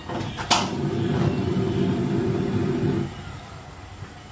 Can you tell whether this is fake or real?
real